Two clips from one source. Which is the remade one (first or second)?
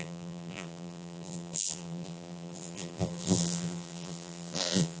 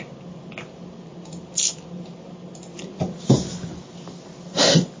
first